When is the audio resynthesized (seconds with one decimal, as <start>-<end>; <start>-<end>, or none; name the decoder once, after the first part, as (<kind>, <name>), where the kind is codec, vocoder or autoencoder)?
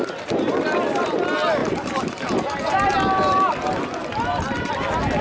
none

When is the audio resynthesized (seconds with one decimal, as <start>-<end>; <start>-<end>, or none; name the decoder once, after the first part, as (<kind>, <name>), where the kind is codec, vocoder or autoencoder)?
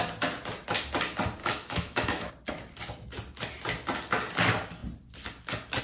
1.4-2.3 (autoencoder, DAC-VAE)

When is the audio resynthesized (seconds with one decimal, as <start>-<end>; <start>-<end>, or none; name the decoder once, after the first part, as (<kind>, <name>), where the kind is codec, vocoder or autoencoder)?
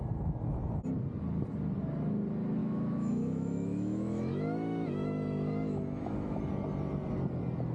2.6-6.4 (autoencoder, DAC-VAE)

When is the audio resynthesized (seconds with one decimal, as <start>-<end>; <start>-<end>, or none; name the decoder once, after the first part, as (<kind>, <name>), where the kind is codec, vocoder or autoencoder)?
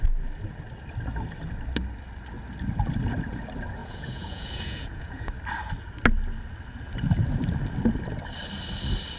3.8-5.3 (vocoder, Vocos)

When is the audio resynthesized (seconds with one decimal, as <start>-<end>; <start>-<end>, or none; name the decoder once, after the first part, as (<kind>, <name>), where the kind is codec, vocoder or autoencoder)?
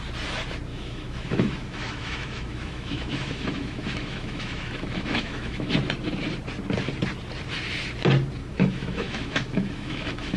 0.7-5.7 (autoencoder, DAC-VAE); 8.4-10.4